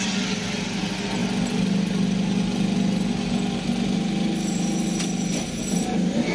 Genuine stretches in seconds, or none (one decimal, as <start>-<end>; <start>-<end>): 0.0-6.3